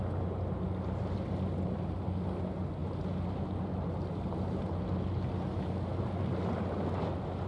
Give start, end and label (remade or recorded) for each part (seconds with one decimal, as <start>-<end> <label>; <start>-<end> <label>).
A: 0.0-7.5 recorded